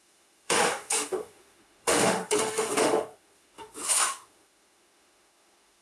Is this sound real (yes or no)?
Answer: no